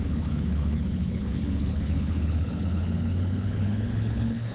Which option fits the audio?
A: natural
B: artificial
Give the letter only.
B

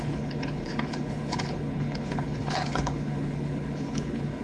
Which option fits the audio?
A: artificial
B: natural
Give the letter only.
A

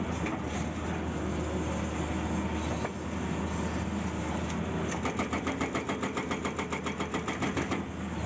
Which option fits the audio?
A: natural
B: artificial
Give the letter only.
A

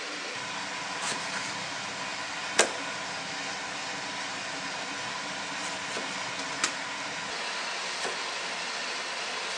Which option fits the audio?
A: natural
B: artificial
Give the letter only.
A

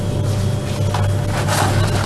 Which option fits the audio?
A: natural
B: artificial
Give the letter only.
A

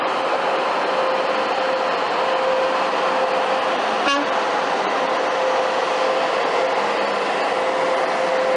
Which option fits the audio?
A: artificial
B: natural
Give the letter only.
B